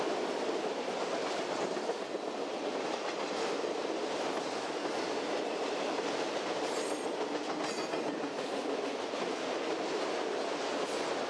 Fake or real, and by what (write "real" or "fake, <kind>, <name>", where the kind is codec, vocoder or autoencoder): real